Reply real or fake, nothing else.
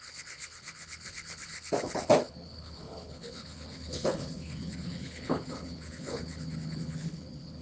fake